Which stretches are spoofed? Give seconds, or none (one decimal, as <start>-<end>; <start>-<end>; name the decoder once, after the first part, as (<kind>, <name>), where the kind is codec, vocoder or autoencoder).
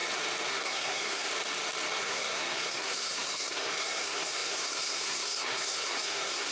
0.5-1.3 (codec, SNAC); 2.0-6.5